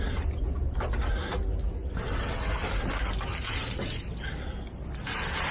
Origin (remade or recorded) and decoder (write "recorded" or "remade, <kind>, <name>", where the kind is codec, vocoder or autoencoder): recorded